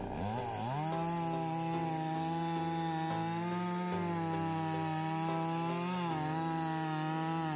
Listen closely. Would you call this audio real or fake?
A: real